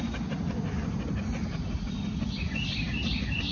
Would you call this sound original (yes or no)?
yes